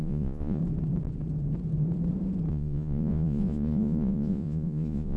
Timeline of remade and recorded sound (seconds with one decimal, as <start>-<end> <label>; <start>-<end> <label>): 0.0-0.6 remade; 0.6-2.5 recorded; 2.5-5.2 remade